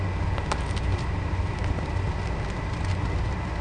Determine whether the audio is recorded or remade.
recorded